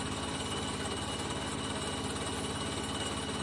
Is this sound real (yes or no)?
yes